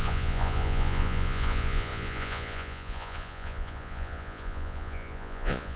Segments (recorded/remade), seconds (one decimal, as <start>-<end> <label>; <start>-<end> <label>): 0.0-5.8 remade